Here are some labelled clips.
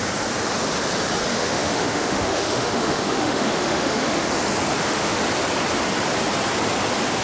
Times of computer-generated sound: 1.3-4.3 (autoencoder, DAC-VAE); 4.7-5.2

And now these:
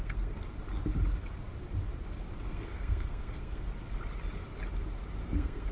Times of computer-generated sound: 0.0-0.4 (codec, SNAC); 2.4-3.7; 5.2-5.7

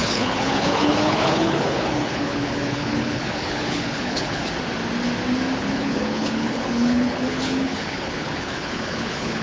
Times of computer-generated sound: 0.0-4.4 (codec, HILCodec); 5.6-9.4

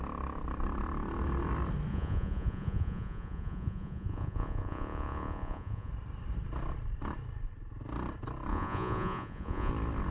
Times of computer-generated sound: 1.9-5.9 (vocoder, Vocos); 8.5-9.7

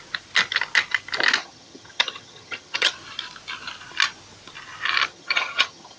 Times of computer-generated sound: 1.4-2.9 (vocoder, HiFi-GAN); 5.1-6.0

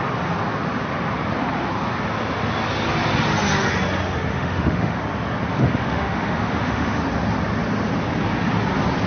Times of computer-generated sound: 4.3-5.0 (autoencoder, DAC-VAE); 5.5-7.0